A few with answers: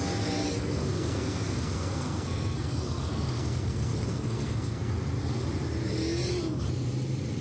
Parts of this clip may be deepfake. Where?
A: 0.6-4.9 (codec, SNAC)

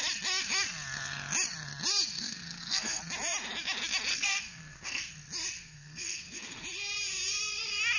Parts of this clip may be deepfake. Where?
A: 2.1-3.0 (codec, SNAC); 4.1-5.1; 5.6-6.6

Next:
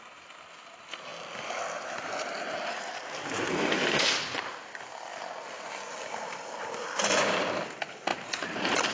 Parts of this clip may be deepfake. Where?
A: 3.5-4.1 (codec, SNAC)

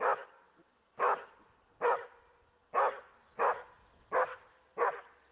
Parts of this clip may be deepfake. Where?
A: none